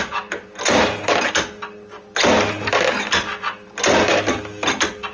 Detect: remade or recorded recorded